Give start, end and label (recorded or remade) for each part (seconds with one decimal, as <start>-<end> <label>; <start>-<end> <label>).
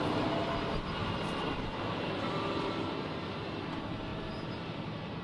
0.0-1.0 recorded; 1.0-1.6 remade; 1.6-4.1 recorded; 4.1-5.2 remade